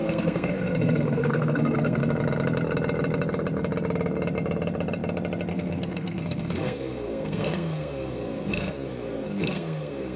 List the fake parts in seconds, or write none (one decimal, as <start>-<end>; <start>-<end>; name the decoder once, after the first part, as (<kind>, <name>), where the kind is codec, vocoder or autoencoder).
0.0-2.0 (codec, SNAC); 5.5-10.2